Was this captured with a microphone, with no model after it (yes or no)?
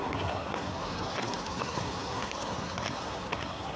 no